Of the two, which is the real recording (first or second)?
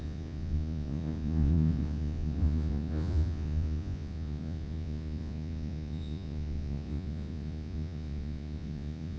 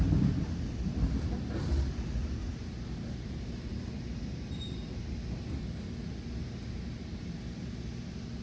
second